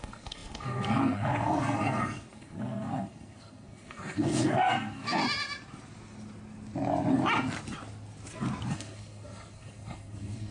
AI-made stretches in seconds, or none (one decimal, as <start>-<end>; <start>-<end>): 0.0-5.2; 8.7-10.5